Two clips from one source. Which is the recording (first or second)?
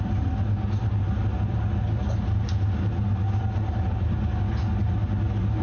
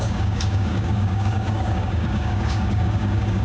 first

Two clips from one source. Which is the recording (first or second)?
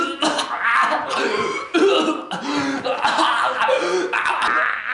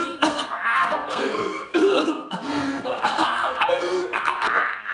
first